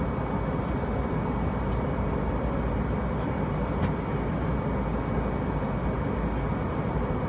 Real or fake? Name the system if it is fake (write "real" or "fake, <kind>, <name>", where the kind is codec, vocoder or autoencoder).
real